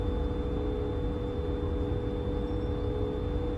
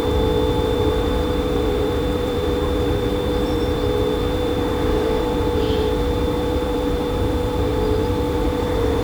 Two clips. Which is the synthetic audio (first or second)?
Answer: second